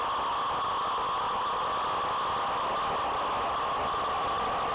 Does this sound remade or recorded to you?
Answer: recorded